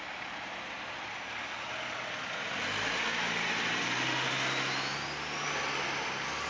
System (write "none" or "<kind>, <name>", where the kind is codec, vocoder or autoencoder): none